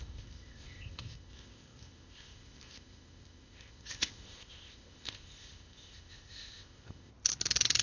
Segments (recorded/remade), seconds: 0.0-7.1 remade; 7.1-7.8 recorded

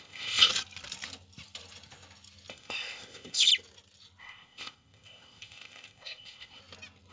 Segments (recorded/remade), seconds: 0.0-0.5 remade; 0.5-2.5 recorded; 2.5-3.5 remade; 3.5-4.2 recorded; 4.2-6.6 remade; 6.6-7.1 recorded

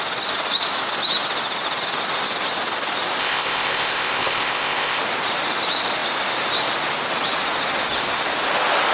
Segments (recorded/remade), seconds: 0.0-3.2 recorded; 3.2-5.0 remade; 5.0-8.9 recorded

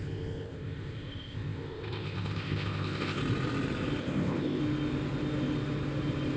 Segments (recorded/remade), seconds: 0.0-3.2 remade; 3.2-4.0 recorded; 4.0-4.6 remade; 4.6-6.4 recorded